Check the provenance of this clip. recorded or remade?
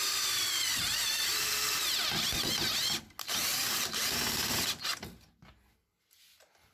recorded